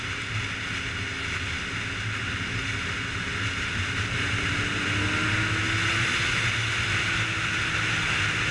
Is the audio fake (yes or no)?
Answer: no